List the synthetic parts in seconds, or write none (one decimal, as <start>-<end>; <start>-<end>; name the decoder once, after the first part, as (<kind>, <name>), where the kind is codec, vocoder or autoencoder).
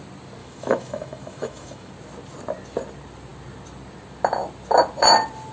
0.4-1.9 (autoencoder, DAC-VAE)